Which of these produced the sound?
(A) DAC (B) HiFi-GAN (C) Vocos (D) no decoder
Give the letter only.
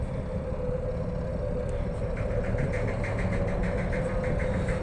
D